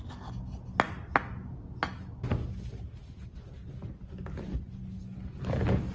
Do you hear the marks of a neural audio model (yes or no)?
no